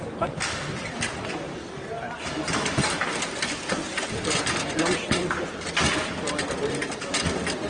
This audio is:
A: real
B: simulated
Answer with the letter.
A